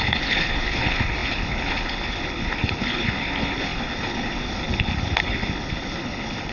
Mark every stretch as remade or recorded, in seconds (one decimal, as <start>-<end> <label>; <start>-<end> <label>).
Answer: 0.0-6.5 remade